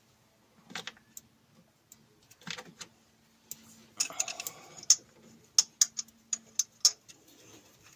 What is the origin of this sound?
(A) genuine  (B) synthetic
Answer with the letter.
A